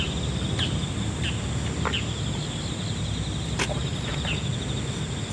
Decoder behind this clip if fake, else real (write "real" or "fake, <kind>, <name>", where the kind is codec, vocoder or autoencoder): real